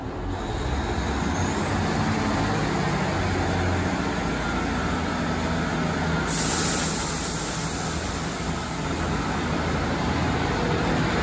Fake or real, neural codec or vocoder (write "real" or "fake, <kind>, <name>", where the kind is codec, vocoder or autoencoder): real